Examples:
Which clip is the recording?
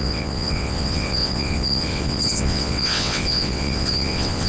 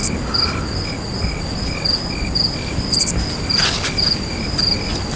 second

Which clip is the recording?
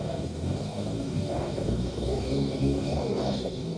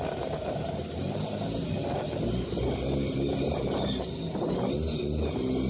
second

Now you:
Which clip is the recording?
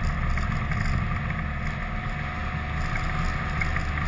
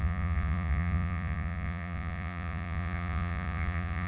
first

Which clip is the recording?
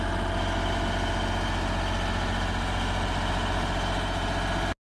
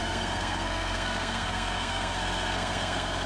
first